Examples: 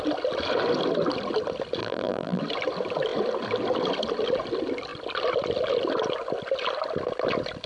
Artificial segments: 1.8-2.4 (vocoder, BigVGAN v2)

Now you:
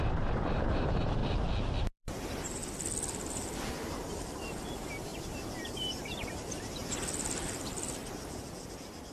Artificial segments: 0.0-1.2 (vocoder, BigVGAN v2); 1.8-2.6; 3.3-6.8